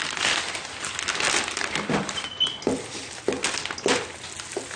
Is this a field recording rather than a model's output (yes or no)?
yes